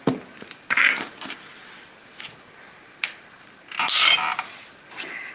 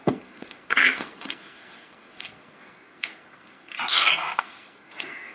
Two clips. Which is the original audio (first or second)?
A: first